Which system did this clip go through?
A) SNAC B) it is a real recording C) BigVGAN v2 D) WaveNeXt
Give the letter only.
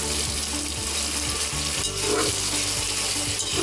B